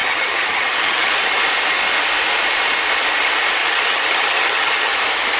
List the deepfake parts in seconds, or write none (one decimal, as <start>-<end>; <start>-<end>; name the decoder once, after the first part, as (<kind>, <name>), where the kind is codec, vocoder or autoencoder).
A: 0.0-1.1 (vocoder, HiFi-GAN); 3.6-4.9